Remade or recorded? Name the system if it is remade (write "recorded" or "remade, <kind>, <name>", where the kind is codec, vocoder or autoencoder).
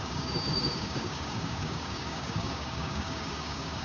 remade, codec, DAC